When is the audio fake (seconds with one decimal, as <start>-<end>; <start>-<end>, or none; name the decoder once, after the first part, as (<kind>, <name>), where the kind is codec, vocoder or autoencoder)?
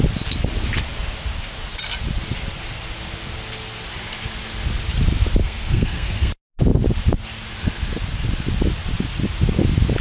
5.4-6.3 (codec, SNAC)